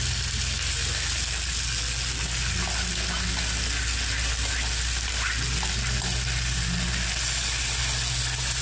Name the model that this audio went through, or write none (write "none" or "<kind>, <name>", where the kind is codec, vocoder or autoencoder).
none